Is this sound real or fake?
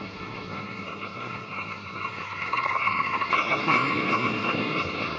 fake